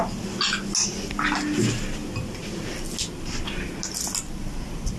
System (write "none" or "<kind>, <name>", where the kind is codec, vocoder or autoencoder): none